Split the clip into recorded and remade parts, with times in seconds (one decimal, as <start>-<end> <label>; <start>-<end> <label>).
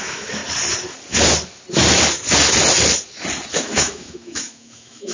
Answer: 0.0-0.4 remade; 0.4-3.5 recorded; 3.5-5.1 remade